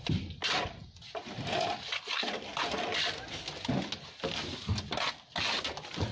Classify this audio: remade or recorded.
recorded